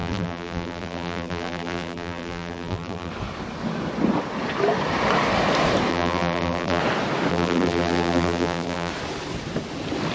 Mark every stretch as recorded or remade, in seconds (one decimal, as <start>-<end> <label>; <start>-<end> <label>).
0.0-3.1 remade; 3.1-5.9 recorded; 5.9-6.8 remade; 6.8-7.3 recorded; 7.3-8.9 remade; 8.9-10.1 recorded